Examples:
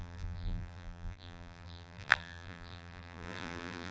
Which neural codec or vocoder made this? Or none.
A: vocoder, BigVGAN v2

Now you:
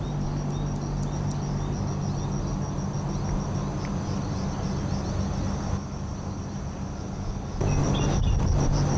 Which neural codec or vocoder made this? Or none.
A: none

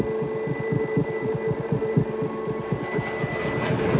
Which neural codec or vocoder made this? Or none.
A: none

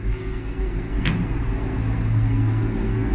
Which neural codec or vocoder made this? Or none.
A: codec, SNAC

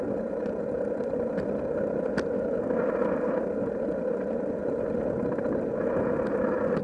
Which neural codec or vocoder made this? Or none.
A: none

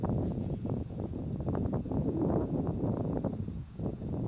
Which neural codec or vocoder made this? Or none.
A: vocoder, Vocos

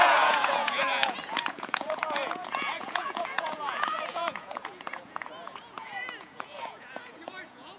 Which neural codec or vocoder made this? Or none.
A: vocoder, Vocos